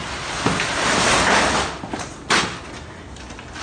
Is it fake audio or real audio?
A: real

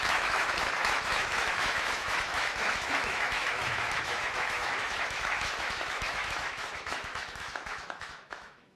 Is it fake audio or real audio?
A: fake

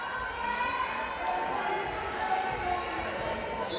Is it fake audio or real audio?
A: real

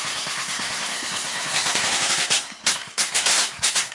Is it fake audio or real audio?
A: fake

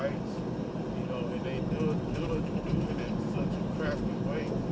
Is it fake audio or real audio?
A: real